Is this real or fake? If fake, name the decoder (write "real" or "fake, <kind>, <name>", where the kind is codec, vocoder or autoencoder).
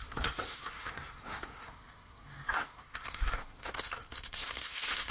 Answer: fake, codec, SNAC